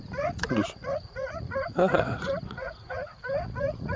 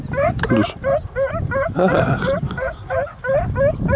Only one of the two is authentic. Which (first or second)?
second